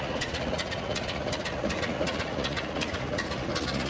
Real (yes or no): no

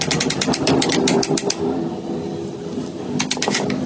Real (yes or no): yes